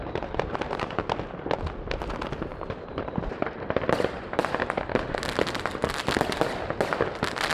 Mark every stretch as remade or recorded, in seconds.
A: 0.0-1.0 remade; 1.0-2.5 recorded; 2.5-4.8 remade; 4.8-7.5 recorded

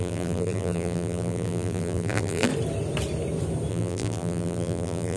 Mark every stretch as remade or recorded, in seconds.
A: 0.0-2.5 remade; 2.5-3.7 recorded; 3.7-5.2 remade

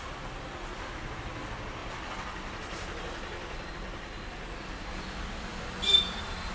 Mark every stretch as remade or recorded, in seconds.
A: 0.0-1.8 recorded; 1.8-3.7 remade; 3.7-5.5 recorded; 5.5-6.5 remade

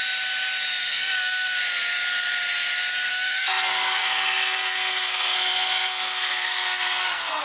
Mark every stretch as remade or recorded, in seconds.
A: 0.0-0.8 recorded; 0.8-1.6 remade; 1.6-3.1 recorded; 3.1-7.4 remade